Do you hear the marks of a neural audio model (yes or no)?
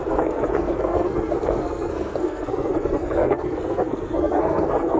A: yes